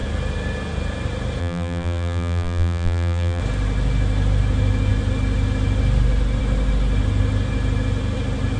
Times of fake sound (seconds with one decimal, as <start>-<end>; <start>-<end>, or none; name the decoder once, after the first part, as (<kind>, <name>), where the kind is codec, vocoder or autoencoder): 1.4-3.4 (vocoder, BigVGAN v2)